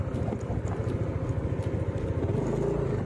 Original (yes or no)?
yes